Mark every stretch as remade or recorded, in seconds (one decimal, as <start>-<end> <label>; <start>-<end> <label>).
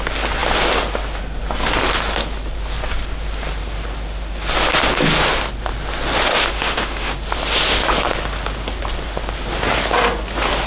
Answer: 0.0-6.3 recorded; 6.3-7.1 remade; 7.1-10.7 recorded